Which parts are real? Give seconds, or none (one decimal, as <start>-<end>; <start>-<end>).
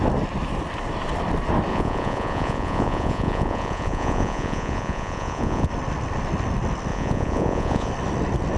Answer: 0.0-1.7; 5.7-6.9; 7.9-8.6